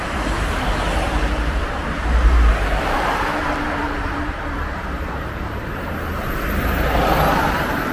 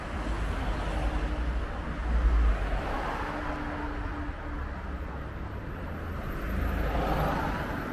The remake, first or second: first